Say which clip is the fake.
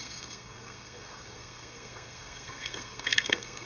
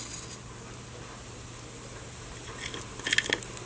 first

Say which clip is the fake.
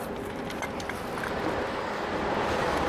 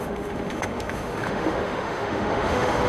second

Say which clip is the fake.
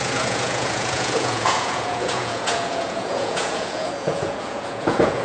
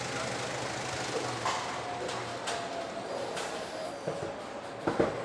first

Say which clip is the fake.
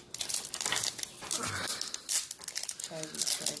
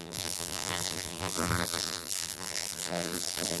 second